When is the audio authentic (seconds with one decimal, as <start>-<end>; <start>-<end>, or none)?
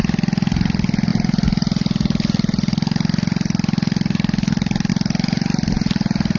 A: 0.0-6.4